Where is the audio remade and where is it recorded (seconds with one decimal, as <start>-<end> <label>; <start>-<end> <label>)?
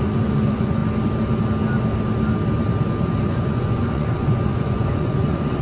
0.0-0.8 remade; 0.8-3.2 recorded; 3.2-5.6 remade